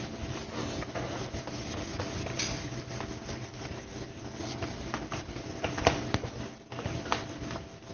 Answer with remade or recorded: recorded